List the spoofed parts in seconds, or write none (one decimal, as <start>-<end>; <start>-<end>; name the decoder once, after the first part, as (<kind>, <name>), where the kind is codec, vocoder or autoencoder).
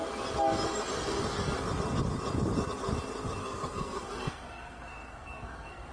3.4-5.9 (codec, SNAC)